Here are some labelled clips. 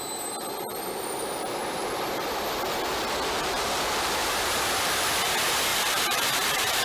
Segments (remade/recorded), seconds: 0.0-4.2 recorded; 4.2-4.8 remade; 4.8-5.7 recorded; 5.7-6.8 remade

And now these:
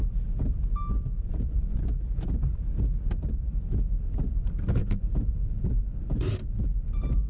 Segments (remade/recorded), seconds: 0.0-4.8 recorded; 4.8-6.6 remade; 6.6-7.3 recorded

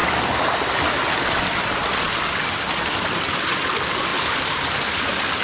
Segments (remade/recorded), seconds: 0.0-5.4 recorded

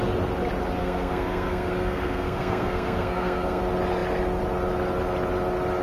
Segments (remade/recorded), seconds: 0.0-0.8 recorded; 0.8-3.6 remade; 3.6-5.8 recorded

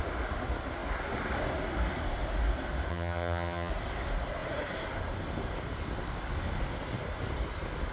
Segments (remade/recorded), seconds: 0.0-2.9 recorded; 2.9-3.7 remade; 3.7-7.9 recorded

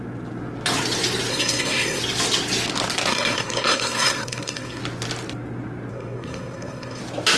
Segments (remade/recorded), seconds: 0.0-1.3 recorded; 1.3-2.0 remade; 2.0-3.1 recorded; 3.1-4.8 remade; 4.8-5.9 recorded; 5.9-7.0 remade; 7.0-7.4 recorded

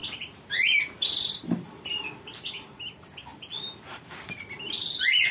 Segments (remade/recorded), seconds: 0.0-5.3 recorded